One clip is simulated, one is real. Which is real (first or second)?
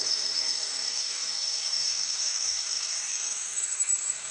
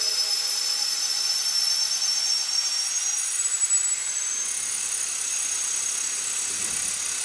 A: second